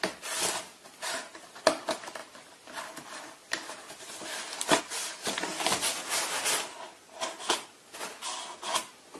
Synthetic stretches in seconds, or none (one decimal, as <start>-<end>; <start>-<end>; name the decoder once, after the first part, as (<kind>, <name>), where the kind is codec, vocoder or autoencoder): 2.2-4.8 (vocoder, BigVGAN v2)